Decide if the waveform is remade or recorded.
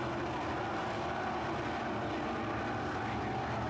recorded